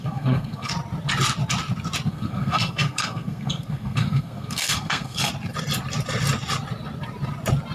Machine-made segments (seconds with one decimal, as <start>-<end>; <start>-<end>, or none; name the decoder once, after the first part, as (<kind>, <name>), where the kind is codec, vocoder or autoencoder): 0.0-0.7 (codec, SNAC); 2.1-5.3